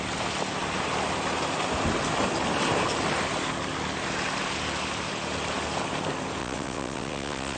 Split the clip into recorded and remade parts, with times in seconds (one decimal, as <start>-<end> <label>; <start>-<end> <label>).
0.0-6.4 recorded; 6.4-7.6 remade